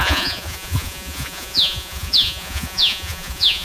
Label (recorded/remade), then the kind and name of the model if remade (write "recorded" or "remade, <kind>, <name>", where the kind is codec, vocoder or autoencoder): remade, vocoder, Vocos